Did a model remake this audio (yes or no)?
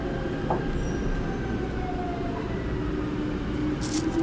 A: no